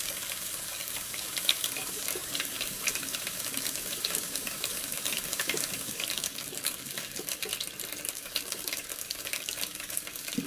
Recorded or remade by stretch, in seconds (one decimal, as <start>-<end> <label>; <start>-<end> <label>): 0.0-7.5 remade; 7.5-8.1 recorded; 8.1-10.5 remade